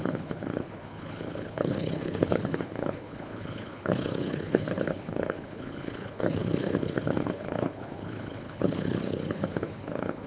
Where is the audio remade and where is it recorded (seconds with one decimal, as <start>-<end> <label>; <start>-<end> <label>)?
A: 0.0-10.3 remade